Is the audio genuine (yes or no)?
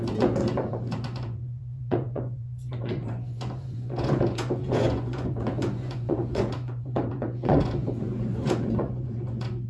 no